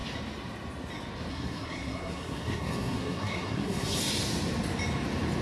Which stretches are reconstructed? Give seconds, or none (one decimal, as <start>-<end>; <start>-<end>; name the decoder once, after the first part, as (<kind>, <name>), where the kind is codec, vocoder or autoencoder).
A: 1.3-4.0 (codec, SNAC)